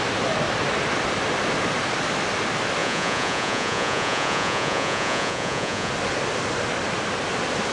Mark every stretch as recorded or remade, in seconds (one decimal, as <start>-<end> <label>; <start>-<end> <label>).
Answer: 0.0-2.8 recorded; 2.8-5.9 remade; 5.9-7.7 recorded